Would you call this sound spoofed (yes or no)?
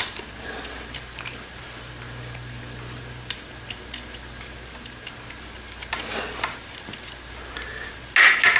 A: no